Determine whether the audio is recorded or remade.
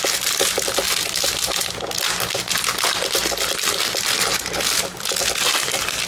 recorded